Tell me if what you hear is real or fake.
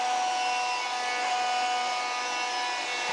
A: real